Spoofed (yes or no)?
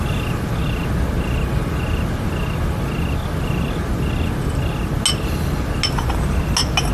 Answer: no